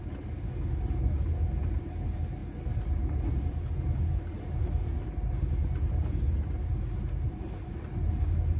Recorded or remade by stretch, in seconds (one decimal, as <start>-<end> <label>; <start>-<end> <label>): 0.0-8.6 recorded